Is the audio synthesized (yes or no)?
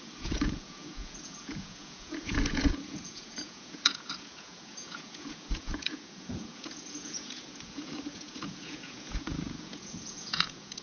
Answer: yes